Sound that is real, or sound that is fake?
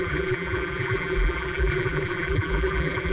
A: fake